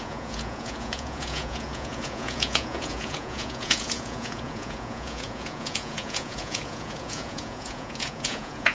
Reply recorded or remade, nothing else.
remade